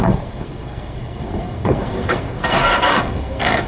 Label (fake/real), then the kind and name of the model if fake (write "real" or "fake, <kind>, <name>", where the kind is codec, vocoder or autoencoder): fake, codec, SNAC